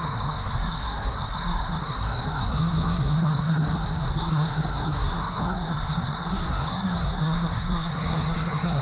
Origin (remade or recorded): remade